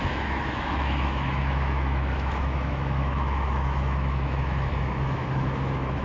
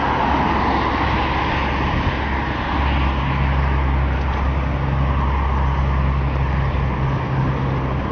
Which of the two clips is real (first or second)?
second